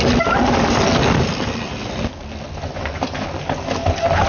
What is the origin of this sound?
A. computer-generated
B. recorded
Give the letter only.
B